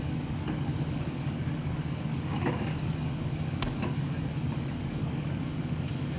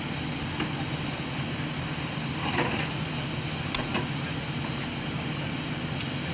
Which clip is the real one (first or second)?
second